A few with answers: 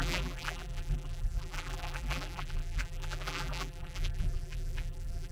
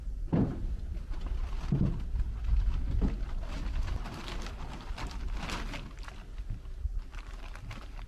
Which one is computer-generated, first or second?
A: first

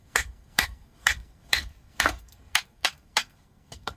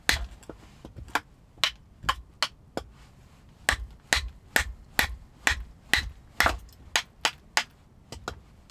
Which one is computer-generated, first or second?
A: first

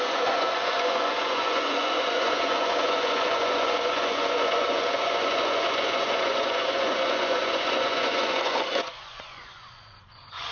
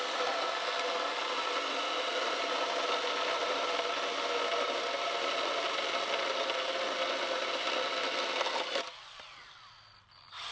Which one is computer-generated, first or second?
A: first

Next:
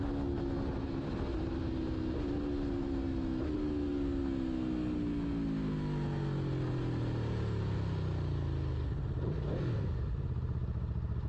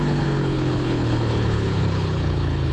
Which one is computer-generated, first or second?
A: second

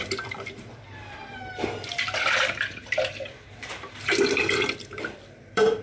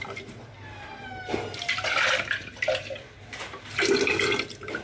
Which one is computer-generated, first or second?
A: first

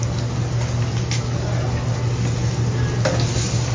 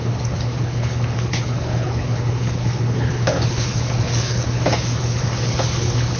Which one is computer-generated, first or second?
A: second